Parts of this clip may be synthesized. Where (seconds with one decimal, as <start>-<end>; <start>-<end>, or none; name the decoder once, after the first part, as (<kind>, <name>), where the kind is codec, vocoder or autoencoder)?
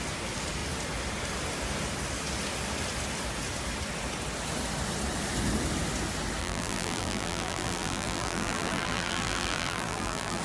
6.4-10.4 (vocoder, BigVGAN v2)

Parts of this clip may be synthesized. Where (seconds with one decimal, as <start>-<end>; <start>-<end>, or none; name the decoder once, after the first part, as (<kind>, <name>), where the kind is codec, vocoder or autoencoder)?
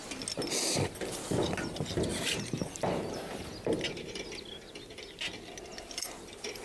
2.1-3.5 (vocoder, BigVGAN v2)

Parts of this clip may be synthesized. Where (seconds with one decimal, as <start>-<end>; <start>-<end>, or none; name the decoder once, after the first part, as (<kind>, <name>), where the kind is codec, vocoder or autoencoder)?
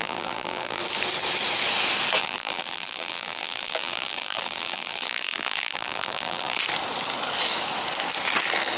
0.0-0.8 (vocoder, BigVGAN v2); 2.2-6.6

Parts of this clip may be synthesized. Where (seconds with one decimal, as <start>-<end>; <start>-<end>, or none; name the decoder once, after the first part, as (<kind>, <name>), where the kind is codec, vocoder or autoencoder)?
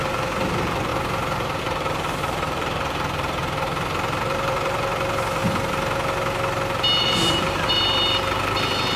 0.0-0.9 (vocoder, BigVGAN v2); 1.6-3.4; 4.2-5.4; 7.0-9.0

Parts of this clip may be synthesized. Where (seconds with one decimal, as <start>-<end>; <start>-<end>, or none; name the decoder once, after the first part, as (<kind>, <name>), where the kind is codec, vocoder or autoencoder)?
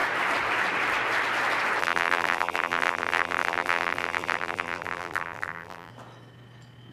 1.8-5.9 (vocoder, BigVGAN v2)